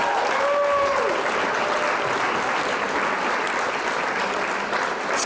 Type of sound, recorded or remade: recorded